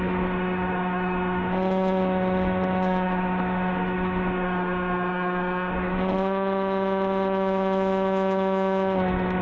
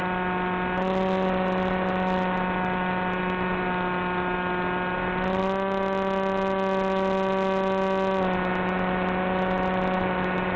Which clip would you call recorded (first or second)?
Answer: second